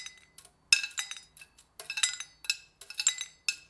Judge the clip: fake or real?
real